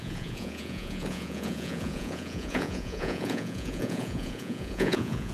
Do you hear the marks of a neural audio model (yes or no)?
yes